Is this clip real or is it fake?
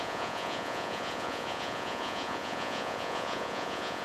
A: fake